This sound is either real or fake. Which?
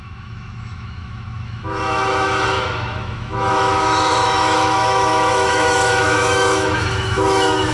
fake